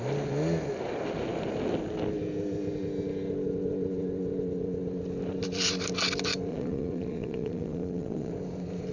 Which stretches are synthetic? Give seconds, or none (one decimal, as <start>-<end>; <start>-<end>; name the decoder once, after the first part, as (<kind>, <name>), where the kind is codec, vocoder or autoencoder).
6.5-8.3 (vocoder, Vocos)